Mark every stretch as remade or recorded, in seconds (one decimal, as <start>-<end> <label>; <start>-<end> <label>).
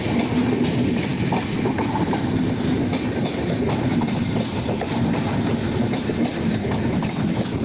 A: 0.0-6.6 recorded; 6.6-7.6 remade